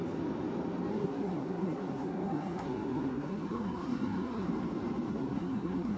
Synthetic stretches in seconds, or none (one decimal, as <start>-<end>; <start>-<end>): 0.9-4.5; 5.1-6.0